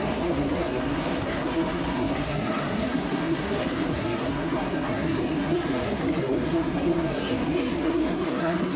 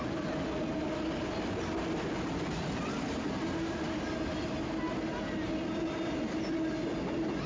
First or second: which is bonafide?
second